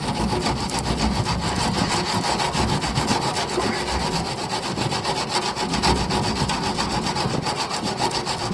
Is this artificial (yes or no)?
no